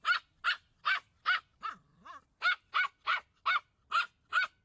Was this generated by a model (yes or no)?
no